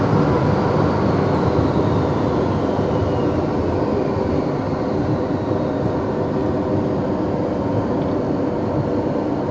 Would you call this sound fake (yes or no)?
no